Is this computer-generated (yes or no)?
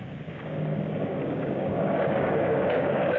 yes